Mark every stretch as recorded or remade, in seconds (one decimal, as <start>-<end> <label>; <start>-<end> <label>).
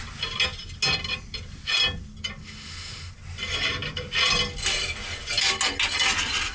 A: 0.0-2.4 recorded; 2.4-3.1 remade; 3.1-6.5 recorded